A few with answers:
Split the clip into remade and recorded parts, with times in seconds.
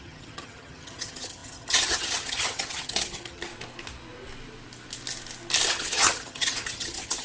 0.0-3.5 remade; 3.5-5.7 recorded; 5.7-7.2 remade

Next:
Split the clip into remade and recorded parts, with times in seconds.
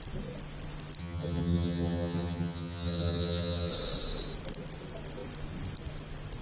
0.0-1.0 recorded; 1.0-3.7 remade; 3.7-6.4 recorded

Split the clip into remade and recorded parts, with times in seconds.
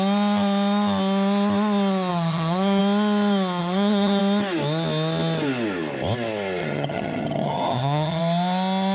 0.0-2.1 recorded; 2.1-2.8 remade; 2.8-3.6 recorded; 3.6-4.2 remade; 4.2-6.6 recorded; 6.6-8.2 remade; 8.2-8.9 recorded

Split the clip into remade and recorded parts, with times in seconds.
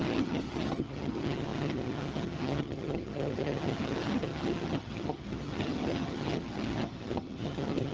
0.0-7.9 remade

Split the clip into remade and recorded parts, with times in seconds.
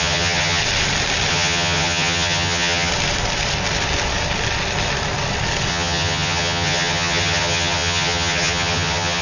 0.0-0.6 remade; 0.6-1.3 recorded; 1.3-2.9 remade; 2.9-5.7 recorded; 5.7-9.2 remade